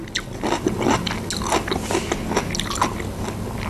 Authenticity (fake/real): real